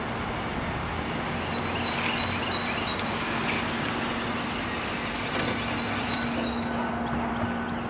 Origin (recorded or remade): recorded